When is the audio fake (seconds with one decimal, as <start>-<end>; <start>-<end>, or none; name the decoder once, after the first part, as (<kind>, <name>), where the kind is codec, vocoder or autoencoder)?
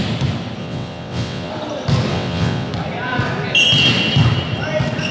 0.6-1.5 (vocoder, WaveNeXt); 2.1-2.7